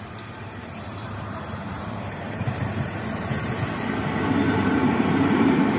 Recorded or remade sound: remade